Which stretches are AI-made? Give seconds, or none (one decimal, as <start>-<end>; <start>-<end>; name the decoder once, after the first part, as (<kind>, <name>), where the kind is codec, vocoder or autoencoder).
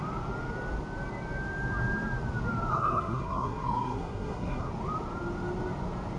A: 2.7-4.7 (codec, SNAC)